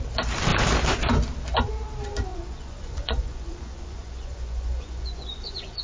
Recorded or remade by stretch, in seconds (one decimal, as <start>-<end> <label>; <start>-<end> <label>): 0.0-2.3 recorded; 2.3-5.8 remade